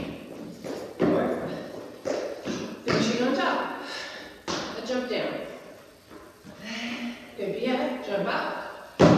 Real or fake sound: real